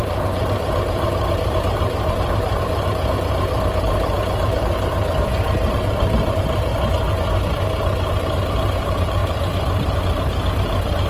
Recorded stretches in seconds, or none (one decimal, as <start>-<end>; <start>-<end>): 6.7-8.0; 9.2-10.0